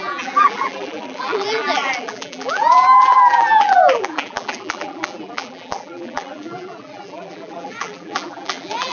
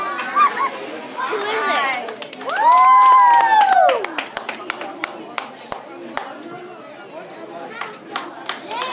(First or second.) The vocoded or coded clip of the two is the first